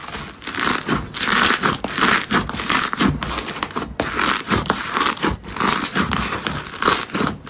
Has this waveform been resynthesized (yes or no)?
no